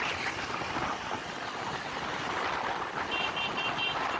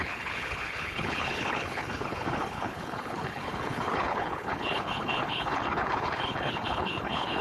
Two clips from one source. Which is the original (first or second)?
first